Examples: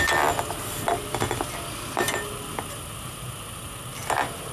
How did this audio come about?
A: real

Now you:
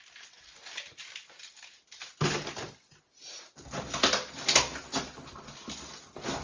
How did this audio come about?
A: real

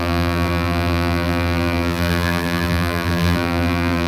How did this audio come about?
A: fake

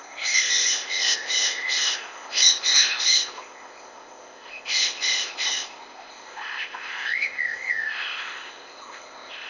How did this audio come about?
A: fake